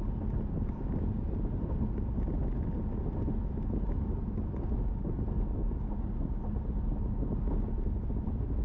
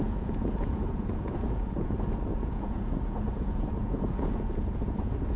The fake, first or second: second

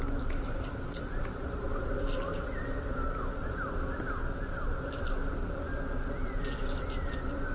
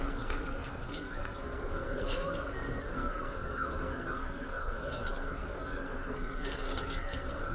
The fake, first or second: second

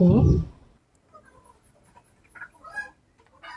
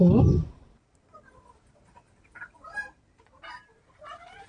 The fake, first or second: second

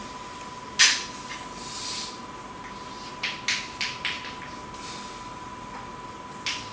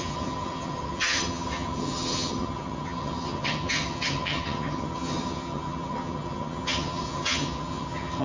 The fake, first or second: second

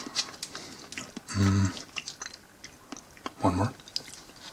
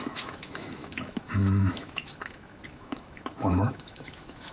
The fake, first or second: second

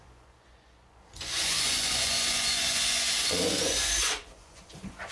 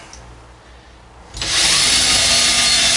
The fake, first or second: first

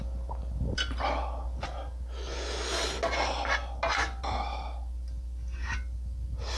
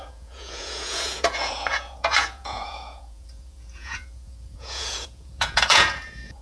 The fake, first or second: second